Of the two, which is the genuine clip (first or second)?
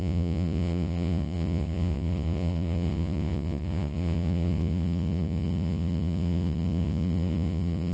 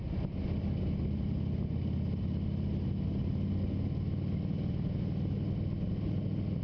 second